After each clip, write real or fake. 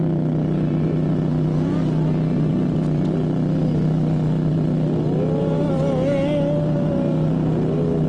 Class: real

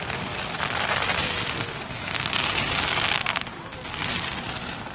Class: real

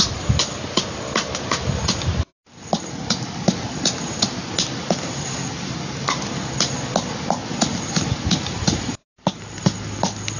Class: real